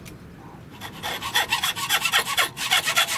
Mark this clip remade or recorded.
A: recorded